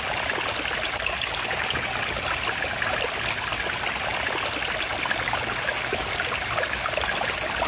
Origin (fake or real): real